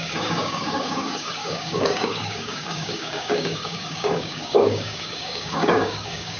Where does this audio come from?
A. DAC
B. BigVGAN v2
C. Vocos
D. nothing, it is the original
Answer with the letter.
A